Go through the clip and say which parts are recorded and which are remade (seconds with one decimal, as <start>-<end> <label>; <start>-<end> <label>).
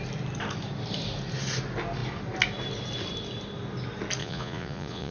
0.0-4.2 recorded; 4.2-5.1 remade